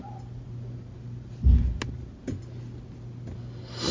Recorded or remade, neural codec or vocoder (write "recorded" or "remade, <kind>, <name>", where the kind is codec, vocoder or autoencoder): recorded